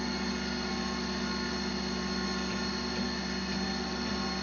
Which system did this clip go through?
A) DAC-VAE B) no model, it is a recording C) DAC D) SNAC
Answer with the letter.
B